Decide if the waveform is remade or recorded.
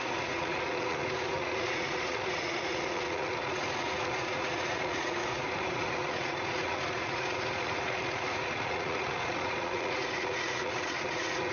remade